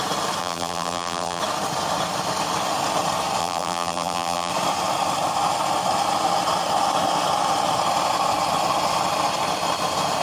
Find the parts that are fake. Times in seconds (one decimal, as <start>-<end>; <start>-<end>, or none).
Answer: 0.4-1.4; 3.4-4.5